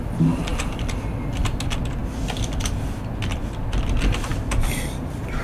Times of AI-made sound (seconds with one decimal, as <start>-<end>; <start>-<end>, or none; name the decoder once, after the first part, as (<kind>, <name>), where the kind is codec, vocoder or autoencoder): none